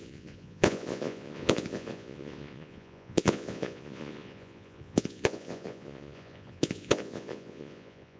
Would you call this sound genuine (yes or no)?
no